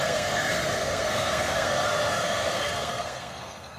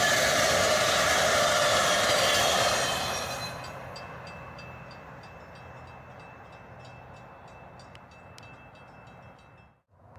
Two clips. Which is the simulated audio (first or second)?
first